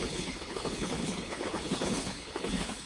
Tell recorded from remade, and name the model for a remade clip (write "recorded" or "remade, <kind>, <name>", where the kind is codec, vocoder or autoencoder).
remade, codec, HILCodec